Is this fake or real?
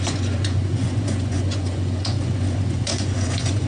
fake